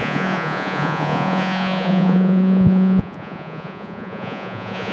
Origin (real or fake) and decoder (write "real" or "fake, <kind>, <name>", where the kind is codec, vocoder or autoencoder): fake, vocoder, Vocos